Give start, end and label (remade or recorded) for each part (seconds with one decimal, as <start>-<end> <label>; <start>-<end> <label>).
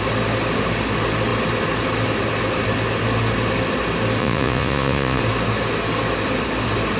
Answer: 0.0-4.2 recorded; 4.2-5.2 remade; 5.2-7.0 recorded